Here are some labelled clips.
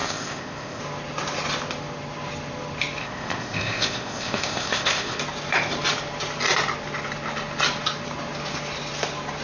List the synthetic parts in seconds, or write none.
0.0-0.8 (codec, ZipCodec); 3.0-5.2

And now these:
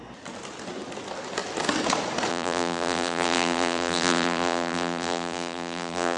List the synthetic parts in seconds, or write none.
2.3-6.2 (vocoder, BigVGAN v2)

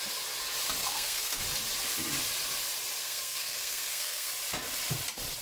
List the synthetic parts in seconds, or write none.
0.8-1.4 (codec, SNAC); 3.0-4.3

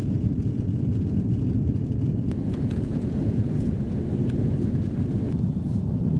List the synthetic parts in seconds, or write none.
0.0-3.7 (vocoder, Vocos)

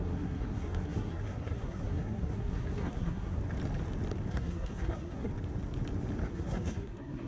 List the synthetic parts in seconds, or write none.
0.0-3.4 (codec, SNAC); 4.3-5.3; 6.3-7.3